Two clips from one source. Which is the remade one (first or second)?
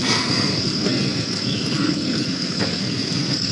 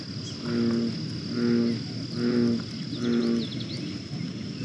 first